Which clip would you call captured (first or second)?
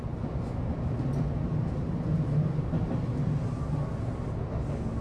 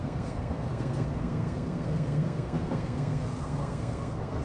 first